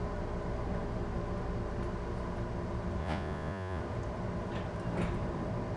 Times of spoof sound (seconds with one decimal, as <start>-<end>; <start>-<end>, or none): 3.0-3.8